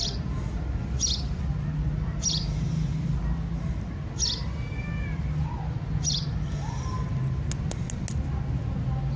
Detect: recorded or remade recorded